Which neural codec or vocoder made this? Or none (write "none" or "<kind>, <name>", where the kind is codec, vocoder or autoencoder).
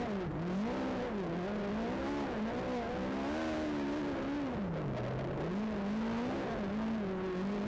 none